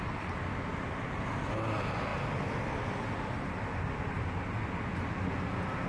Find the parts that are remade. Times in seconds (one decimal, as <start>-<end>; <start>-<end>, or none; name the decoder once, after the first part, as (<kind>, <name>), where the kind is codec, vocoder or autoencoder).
none